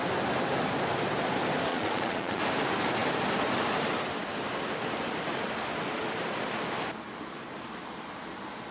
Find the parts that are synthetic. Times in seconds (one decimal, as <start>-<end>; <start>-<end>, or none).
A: 1.7-2.4